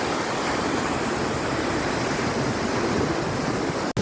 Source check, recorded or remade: recorded